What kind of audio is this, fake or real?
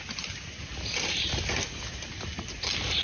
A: real